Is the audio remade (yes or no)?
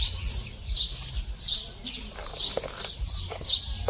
no